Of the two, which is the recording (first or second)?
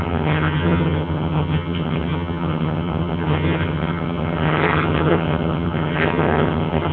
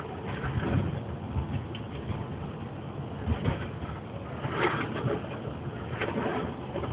second